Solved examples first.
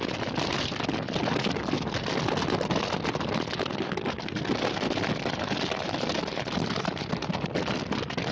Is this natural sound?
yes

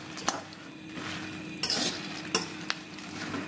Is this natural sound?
yes